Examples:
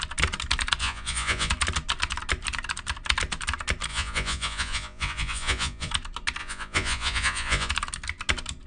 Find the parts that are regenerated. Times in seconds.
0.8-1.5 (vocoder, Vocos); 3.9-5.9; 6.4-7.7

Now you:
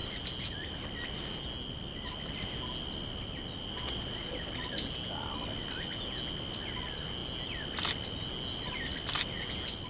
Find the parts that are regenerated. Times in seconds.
3.7-4.5 (vocoder, Vocos)

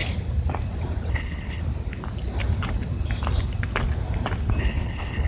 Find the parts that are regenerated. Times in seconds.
1.1-1.6 (codec, HILCodec); 4.6-5.3

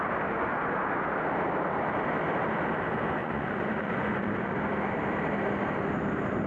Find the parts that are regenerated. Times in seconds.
3.2-4.6 (vocoder, Vocos)

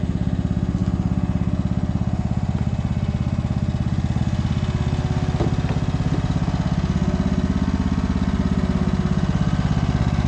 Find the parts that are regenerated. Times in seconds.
none